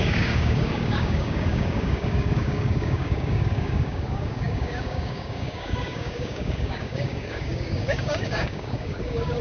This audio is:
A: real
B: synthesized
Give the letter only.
B